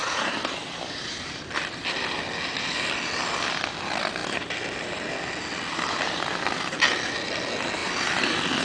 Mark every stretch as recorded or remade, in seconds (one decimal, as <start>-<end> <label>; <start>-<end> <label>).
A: 0.0-1.6 remade; 1.6-8.6 recorded